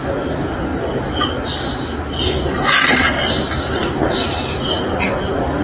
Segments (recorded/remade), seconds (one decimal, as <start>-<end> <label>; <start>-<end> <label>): 0.0-5.6 recorded